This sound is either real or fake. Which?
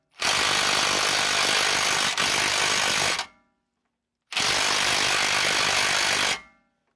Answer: real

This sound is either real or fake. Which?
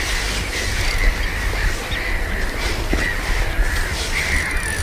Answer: real